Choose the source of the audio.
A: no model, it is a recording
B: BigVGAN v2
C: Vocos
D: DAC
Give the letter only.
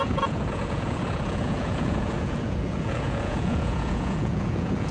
C